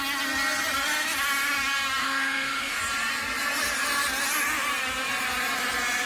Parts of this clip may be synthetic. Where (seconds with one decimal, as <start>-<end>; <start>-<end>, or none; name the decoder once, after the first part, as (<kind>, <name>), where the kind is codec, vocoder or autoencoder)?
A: 2.0-2.8 (autoencoder, DAC-VAE)